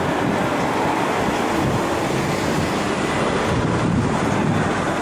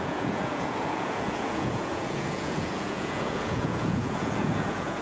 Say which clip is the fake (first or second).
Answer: second